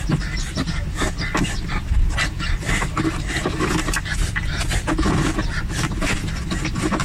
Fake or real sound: real